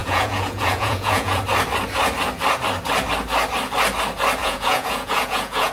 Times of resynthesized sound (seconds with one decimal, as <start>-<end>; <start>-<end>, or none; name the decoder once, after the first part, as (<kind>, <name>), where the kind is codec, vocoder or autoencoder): 0.0-1.4 (vocoder, Vocos); 4.4-5.7